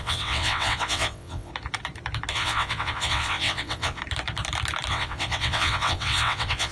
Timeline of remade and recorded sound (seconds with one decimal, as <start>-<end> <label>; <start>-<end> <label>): 0.0-1.5 remade; 1.5-2.3 recorded; 2.3-4.0 remade; 4.0-4.9 recorded; 4.9-6.7 remade

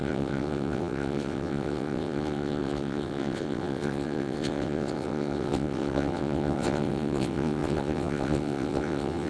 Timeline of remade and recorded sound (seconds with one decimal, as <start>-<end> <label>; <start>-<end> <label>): 0.0-9.3 remade